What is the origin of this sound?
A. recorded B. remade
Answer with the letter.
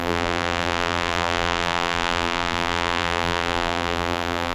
B